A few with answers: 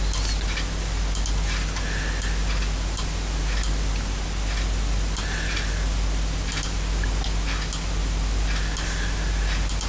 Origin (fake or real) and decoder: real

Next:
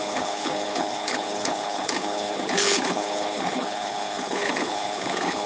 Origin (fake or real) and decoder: fake, codec, HILCodec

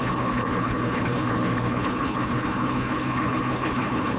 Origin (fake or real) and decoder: fake, codec, HILCodec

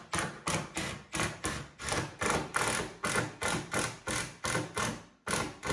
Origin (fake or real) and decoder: real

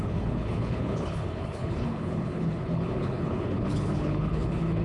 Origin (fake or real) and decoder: fake, codec, HILCodec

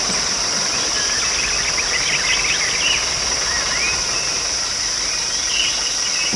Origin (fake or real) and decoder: real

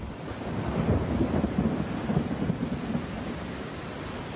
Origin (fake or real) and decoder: real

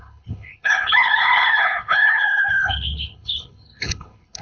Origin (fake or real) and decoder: fake, codec, HILCodec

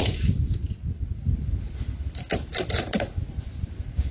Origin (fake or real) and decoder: real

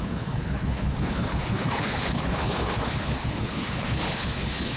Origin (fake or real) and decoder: fake, codec, HILCodec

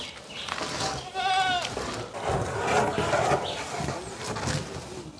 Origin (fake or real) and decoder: real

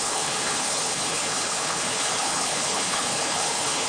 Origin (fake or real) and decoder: fake, codec, HILCodec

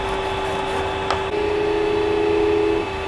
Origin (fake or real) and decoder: real